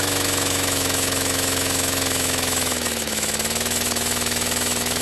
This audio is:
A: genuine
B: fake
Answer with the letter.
B